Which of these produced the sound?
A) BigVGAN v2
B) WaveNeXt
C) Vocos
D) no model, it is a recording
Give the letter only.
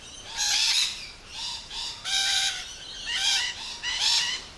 A